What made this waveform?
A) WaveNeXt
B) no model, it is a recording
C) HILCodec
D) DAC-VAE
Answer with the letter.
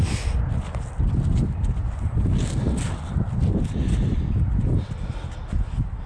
B